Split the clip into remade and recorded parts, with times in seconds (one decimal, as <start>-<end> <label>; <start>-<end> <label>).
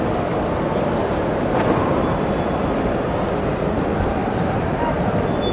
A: 0.0-4.2 recorded; 4.2-4.9 remade; 4.9-5.5 recorded